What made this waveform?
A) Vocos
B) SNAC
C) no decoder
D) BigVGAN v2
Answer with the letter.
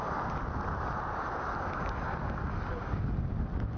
C